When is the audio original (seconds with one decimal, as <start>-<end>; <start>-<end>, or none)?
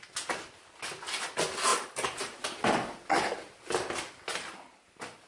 0.0-1.7; 2.6-5.3